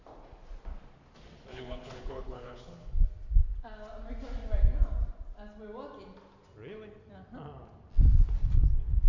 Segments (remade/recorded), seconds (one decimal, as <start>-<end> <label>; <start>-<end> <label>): 0.0-1.5 recorded; 1.5-2.9 remade; 2.9-9.1 recorded